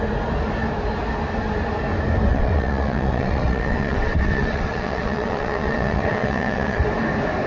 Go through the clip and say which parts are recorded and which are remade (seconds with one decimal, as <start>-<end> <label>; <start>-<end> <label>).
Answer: 0.0-2.3 recorded; 2.3-6.8 remade; 6.8-7.5 recorded